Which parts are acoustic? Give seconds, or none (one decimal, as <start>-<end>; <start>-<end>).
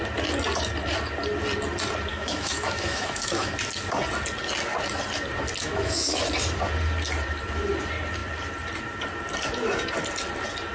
0.0-2.1; 3.5-5.6; 6.2-10.7